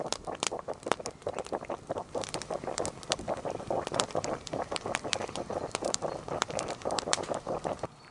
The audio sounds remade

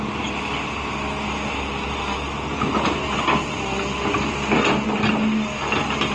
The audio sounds recorded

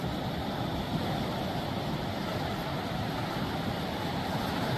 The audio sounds recorded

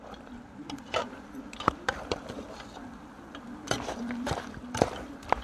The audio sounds remade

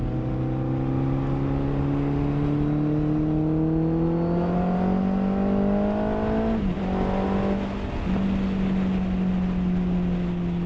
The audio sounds recorded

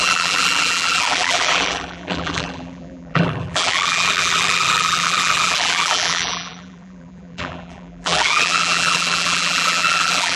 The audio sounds remade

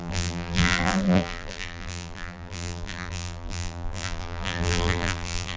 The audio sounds remade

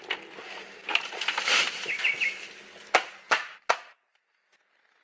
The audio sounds recorded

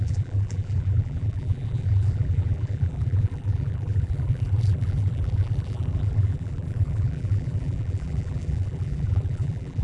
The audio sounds remade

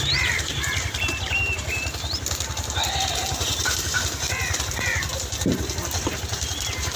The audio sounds remade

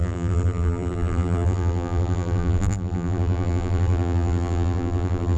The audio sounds remade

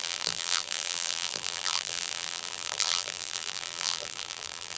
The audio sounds remade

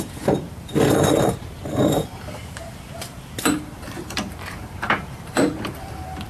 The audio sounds remade